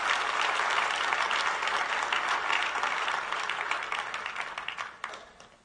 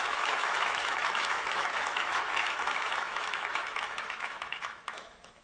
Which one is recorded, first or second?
first